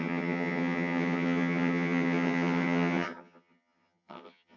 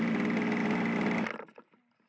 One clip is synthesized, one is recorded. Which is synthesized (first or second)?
first